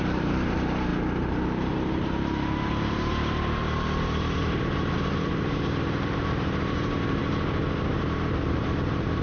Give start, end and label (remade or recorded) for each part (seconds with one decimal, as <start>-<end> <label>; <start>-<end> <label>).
0.0-7.2 remade; 7.2-7.9 recorded; 7.9-9.2 remade